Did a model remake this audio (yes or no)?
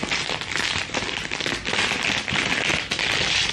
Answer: no